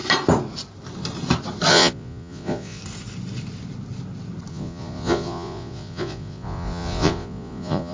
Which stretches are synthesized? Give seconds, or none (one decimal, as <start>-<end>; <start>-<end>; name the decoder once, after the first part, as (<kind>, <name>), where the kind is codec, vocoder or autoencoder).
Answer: 1.7-2.8 (vocoder, Vocos); 4.5-7.9